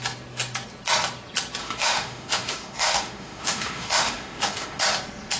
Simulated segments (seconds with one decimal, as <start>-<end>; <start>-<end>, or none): 1.6-4.8

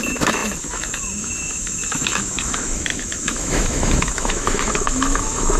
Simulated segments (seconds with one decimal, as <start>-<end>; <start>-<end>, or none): 0.0-5.6

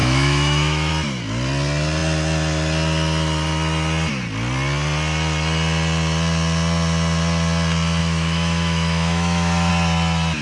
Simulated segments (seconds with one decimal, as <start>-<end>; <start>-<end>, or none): 0.0-0.9; 8.0-9.7

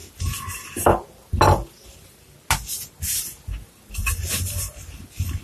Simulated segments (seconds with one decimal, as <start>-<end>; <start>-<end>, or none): none

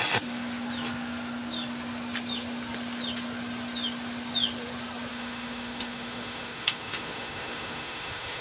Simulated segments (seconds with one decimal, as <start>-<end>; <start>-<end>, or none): 5.1-8.4

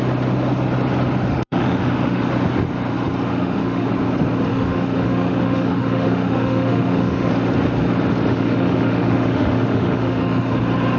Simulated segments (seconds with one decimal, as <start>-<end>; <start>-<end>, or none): 1.3-2.3; 3.3-3.9; 4.5-7.3; 8.3-10.6

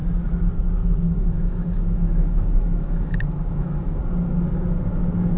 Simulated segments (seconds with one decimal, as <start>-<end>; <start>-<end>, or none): 1.1-4.0